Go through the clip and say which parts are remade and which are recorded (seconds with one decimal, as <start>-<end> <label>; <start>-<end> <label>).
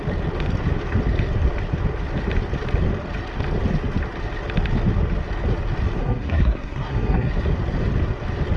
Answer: 0.0-6.0 recorded; 6.0-7.3 remade; 7.3-8.6 recorded